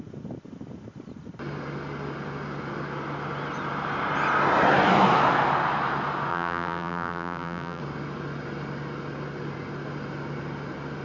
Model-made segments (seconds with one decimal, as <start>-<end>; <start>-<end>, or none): 6.3-7.8